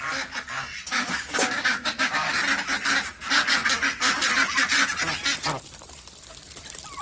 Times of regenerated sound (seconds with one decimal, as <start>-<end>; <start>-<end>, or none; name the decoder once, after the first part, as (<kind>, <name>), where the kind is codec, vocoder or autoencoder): 0.9-2.3 (codec, DAC)